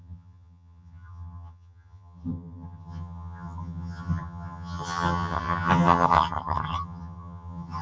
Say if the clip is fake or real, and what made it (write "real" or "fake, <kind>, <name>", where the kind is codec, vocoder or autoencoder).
fake, vocoder, HiFi-GAN